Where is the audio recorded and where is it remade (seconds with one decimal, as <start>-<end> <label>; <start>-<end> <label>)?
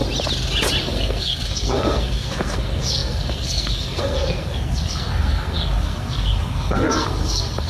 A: 0.0-0.8 recorded; 0.8-7.7 remade